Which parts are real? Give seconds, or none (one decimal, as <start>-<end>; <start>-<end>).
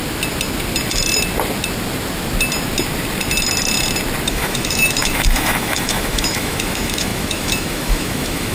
0.0-4.3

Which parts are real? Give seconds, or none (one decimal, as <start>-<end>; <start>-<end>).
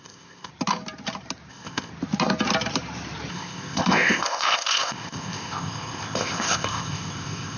0.5-1.5; 1.9-3.3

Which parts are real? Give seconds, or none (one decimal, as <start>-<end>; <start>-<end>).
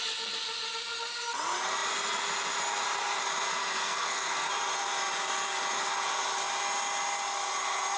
0.0-3.6; 4.5-8.0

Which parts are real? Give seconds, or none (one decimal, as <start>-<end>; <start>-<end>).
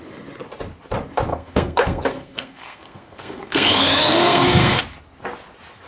0.0-1.3; 4.8-5.9